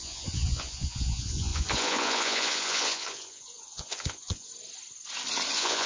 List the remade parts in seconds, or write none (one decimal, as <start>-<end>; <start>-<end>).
0.0-4.5; 5.5-5.9